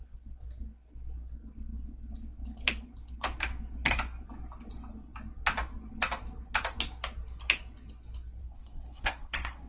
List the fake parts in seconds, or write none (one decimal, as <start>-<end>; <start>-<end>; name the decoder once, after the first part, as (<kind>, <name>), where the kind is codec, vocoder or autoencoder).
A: 8.4-9.7 (codec, SNAC)